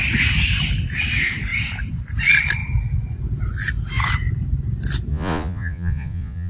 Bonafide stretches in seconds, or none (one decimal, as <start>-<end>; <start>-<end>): 0.0-5.1